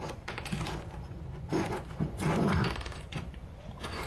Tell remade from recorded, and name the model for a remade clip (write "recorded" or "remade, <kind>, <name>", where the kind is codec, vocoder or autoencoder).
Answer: remade, vocoder, Vocos